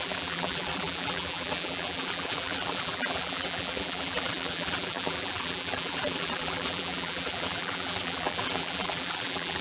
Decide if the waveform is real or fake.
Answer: fake